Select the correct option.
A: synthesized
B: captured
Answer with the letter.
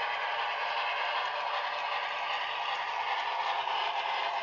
B